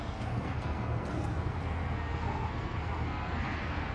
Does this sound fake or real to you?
fake